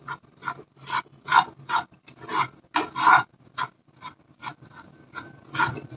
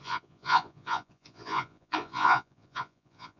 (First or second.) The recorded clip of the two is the first